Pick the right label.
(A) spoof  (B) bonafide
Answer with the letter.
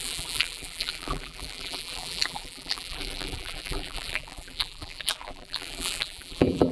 A